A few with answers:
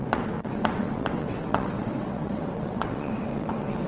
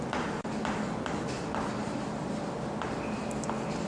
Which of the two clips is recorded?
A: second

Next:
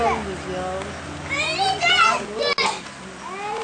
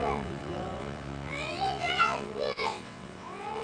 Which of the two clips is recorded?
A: first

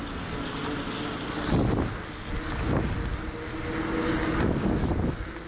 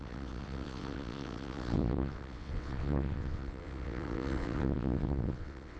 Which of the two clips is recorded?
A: first